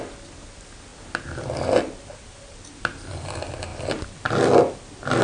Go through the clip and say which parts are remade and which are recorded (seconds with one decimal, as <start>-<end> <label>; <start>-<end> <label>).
0.0-5.2 recorded